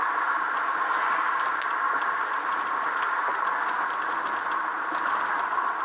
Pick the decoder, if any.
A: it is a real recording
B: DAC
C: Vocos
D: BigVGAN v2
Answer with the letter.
A